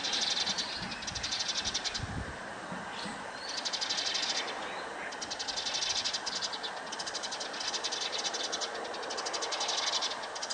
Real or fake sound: real